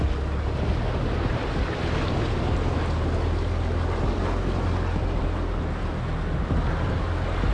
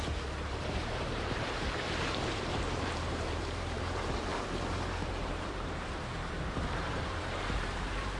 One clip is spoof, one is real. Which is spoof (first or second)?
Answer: second